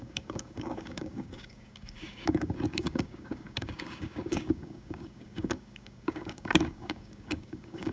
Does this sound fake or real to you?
fake